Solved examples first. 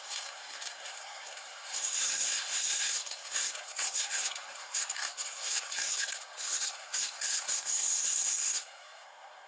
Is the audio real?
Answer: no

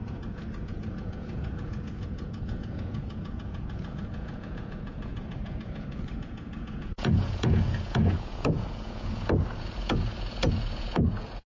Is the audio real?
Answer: no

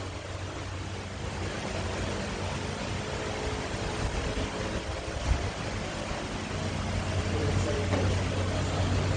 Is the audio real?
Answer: yes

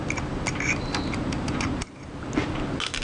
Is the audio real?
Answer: yes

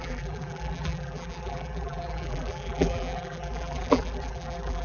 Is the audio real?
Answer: no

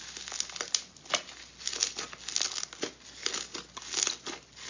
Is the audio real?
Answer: yes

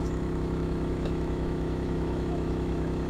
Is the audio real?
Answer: no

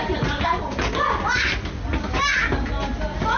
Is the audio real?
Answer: yes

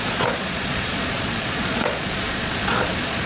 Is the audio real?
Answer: no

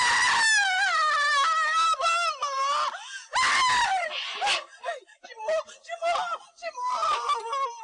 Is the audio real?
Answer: yes